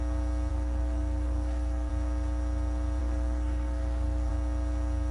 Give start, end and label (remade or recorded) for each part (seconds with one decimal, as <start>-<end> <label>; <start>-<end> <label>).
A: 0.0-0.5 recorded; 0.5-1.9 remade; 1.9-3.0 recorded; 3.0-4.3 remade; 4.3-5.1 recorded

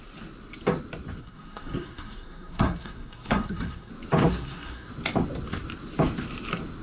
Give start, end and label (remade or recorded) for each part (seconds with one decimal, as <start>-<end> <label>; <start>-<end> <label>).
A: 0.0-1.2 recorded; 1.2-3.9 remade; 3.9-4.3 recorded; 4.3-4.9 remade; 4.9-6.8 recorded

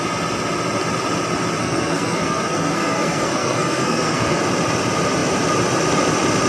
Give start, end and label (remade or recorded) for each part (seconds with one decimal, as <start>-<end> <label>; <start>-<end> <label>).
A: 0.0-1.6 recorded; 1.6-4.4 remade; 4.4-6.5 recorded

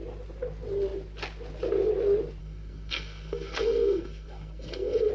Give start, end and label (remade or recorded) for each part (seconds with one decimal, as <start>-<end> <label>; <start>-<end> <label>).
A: 0.0-2.4 recorded; 2.4-5.1 remade